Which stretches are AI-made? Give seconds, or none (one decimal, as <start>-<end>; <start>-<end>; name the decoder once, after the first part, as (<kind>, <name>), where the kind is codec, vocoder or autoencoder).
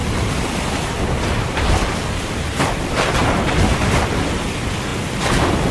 0.0-3.4 (vocoder, BigVGAN v2)